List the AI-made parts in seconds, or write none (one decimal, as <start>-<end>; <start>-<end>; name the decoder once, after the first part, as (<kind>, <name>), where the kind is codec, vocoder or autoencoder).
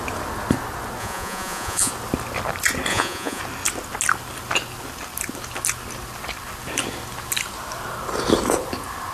1.0-1.9 (vocoder, Vocos); 2.9-3.4